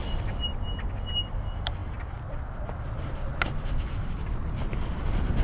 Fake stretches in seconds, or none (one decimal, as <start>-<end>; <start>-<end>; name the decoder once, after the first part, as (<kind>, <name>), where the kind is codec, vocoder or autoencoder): none